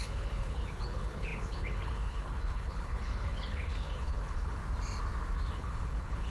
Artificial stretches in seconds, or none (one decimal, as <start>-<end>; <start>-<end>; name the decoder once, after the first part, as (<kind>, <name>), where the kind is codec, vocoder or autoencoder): 0.0-4.6 (codec, HILCodec); 5.5-6.3